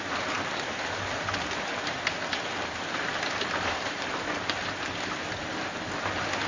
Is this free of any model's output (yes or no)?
yes